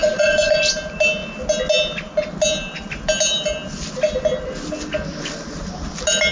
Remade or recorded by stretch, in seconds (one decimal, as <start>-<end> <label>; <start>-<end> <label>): 0.0-0.6 remade; 0.6-6.3 recorded